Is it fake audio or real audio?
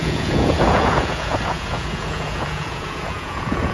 fake